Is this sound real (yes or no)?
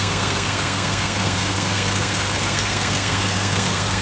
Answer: no